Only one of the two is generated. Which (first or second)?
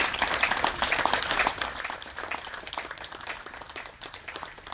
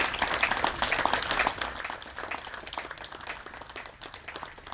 first